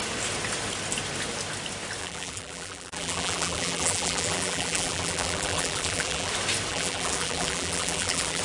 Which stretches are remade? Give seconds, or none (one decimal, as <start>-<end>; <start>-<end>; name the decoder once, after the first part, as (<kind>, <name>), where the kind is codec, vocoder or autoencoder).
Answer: 2.0-6.3 (vocoder, BigVGAN v2); 6.7-8.4